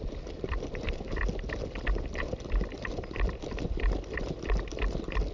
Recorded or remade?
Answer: recorded